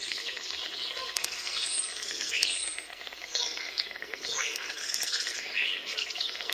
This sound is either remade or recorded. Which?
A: remade